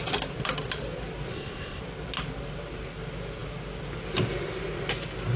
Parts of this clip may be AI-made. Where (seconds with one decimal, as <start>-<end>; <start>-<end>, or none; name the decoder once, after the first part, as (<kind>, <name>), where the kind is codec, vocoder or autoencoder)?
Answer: 1.3-1.8 (codec, ZipCodec)